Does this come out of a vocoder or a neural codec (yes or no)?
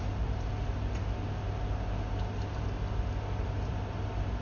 no